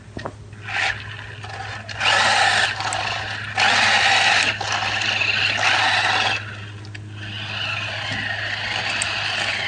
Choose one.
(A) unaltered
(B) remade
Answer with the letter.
A